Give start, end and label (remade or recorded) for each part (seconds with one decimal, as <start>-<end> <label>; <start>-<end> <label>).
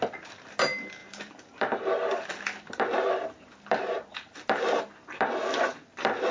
0.0-1.0 recorded; 1.0-4.8 remade; 4.8-6.3 recorded